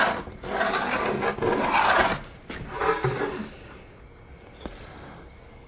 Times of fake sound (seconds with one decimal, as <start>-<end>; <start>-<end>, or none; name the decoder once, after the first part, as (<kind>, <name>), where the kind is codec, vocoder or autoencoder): none